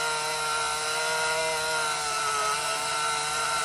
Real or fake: real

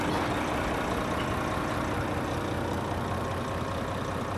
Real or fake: real